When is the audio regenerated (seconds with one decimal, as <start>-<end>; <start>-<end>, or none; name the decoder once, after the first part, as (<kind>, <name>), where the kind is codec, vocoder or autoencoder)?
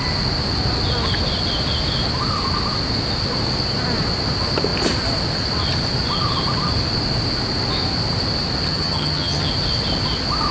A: 8.7-9.5 (vocoder, HiFi-GAN)